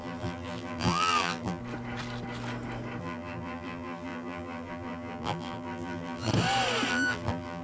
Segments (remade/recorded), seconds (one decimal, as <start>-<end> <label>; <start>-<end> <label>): 0.0-1.6 remade; 1.6-3.0 recorded; 3.0-6.3 remade; 6.3-6.9 recorded; 6.9-7.6 remade